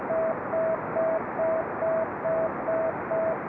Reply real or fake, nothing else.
real